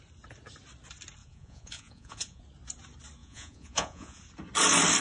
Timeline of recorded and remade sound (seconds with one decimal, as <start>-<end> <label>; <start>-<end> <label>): 0.0-1.2 recorded; 1.2-2.4 remade; 2.4-3.2 recorded; 3.2-4.2 remade; 4.2-5.0 recorded